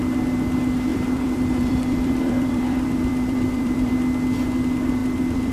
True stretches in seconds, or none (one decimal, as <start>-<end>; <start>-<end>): 0.0-0.9; 3.9-5.0